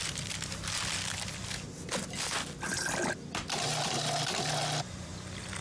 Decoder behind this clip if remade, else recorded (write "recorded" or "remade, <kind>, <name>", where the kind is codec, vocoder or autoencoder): recorded